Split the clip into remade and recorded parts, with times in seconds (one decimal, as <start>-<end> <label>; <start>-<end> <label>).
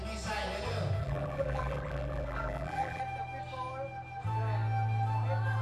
0.0-1.0 recorded; 1.0-3.0 remade; 3.0-5.6 recorded